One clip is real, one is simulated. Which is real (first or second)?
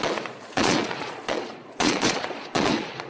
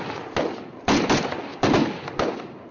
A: second